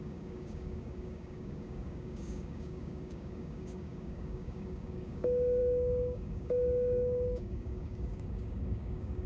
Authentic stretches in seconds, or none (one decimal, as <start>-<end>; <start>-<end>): none